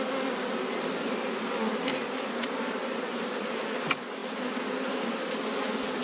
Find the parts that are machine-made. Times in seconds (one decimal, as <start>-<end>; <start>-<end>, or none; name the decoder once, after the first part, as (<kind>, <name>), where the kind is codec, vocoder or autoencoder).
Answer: none